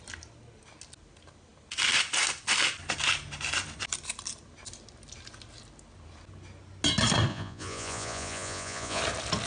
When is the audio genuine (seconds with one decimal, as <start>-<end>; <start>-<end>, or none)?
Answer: 0.0-7.3; 9.0-9.5